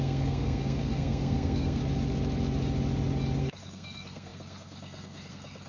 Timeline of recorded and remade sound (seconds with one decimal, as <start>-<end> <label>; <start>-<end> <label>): 0.0-1.8 remade; 1.8-3.4 recorded; 3.4-5.7 remade